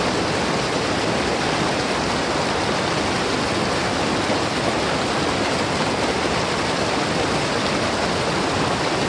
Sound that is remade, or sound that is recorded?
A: recorded